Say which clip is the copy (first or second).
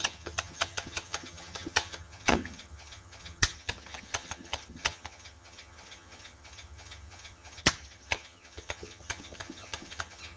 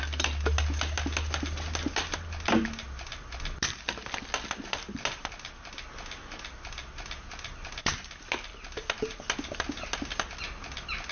first